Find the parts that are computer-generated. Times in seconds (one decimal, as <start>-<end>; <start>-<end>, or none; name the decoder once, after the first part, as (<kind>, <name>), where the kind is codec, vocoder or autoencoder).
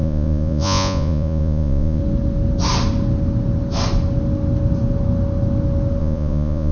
0.0-2.0 (vocoder, Vocos); 6.0-6.7